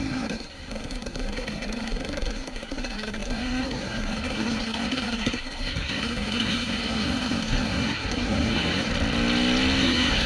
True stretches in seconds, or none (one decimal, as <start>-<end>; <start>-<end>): 8.9-9.8